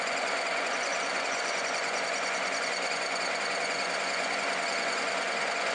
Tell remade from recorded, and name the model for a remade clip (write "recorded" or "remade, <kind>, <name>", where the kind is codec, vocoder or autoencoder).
remade, vocoder, Vocos